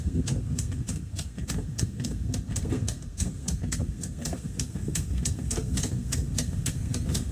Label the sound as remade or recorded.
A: remade